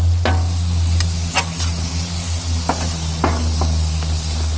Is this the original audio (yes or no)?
yes